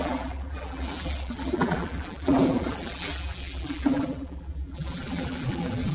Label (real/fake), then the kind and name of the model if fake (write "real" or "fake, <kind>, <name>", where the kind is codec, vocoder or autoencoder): fake, vocoder, BigVGAN v2